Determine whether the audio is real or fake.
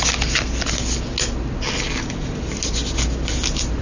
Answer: real